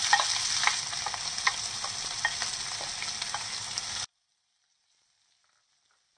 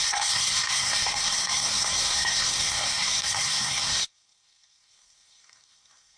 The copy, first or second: second